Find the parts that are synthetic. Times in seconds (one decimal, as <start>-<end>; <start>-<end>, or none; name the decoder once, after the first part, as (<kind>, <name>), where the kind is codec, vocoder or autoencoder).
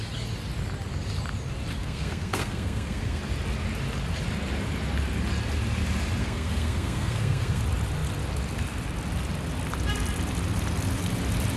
1.8-3.2 (codec, SNAC); 6.2-7.6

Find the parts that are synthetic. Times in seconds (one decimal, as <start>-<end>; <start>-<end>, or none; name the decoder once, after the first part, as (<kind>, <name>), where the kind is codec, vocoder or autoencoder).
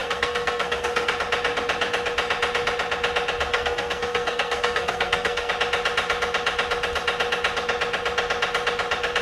0.0-1.1 (codec, SNAC); 3.5-5.5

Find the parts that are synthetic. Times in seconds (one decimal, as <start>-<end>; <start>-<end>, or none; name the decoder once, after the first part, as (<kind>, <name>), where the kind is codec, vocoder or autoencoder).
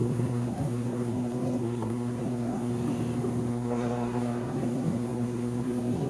0.0-2.7 (codec, SNAC); 3.5-6.1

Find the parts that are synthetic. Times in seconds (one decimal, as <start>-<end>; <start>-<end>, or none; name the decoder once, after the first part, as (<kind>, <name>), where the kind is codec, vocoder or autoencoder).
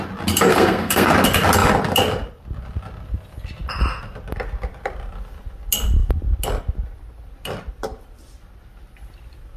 0.5-1.1 (codec, SNAC)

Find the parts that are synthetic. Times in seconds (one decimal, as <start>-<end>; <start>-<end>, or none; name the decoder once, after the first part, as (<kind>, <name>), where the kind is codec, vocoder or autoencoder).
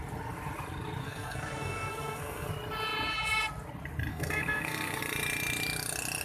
1.0-2.5 (codec, SNAC); 4.1-5.0